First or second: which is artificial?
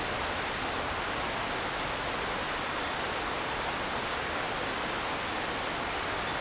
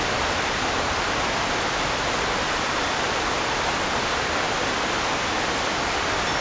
second